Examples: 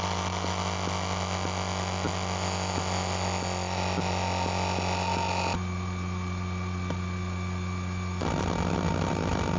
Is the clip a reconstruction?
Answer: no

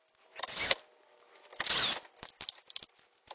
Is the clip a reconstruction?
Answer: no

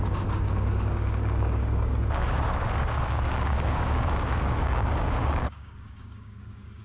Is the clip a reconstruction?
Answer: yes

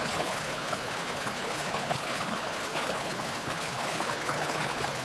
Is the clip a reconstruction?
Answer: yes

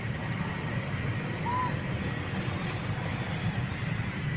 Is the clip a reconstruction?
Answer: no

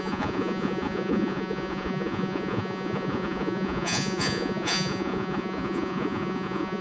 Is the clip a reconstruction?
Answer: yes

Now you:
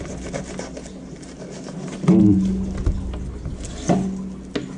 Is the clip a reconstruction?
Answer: no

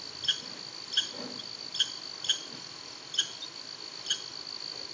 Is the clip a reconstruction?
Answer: no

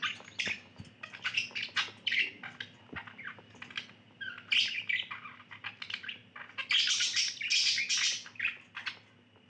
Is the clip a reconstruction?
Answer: no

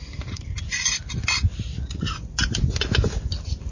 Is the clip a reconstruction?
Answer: no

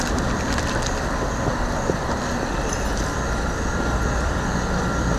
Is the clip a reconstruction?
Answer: no